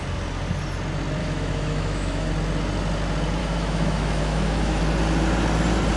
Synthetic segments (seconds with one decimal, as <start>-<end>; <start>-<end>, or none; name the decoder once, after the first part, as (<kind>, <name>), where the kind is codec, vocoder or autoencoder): 1.2-2.3 (autoencoder, DAC-VAE); 3.4-4.8